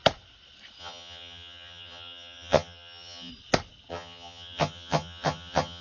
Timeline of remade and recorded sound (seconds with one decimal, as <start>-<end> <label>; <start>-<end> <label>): 0.0-0.8 recorded; 0.8-3.3 remade; 3.3-3.9 recorded; 3.9-5.8 remade